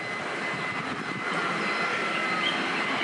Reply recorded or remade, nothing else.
recorded